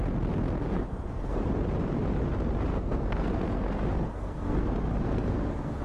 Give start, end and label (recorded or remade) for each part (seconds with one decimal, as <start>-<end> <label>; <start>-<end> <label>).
0.0-0.7 recorded; 0.7-1.4 remade; 1.4-2.7 recorded; 2.7-5.8 remade